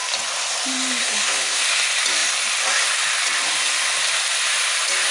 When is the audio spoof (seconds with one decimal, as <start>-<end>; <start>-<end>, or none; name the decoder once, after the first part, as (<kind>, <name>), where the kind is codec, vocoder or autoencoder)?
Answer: 1.0-1.6 (codec, SNAC)

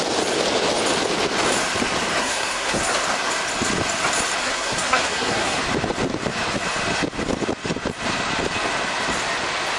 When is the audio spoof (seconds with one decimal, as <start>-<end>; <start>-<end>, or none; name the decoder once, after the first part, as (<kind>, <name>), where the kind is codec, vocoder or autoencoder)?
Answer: 2.2-2.8 (codec, SNAC); 4.4-5.6

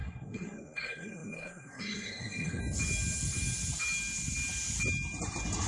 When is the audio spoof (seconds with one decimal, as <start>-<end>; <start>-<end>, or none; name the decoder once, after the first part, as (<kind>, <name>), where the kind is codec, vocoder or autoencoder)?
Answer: 0.0-2.6 (codec, SNAC)